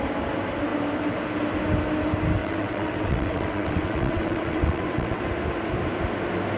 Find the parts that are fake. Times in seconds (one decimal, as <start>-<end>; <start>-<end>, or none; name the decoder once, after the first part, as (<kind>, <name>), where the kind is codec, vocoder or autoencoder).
2.4-5.2 (vocoder, WaveNeXt)